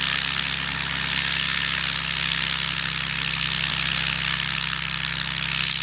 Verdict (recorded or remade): recorded